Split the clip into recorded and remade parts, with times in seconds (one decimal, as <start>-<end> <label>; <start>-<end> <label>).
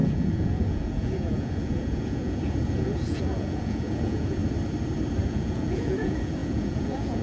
0.0-4.4 remade; 4.4-5.2 recorded; 5.2-7.2 remade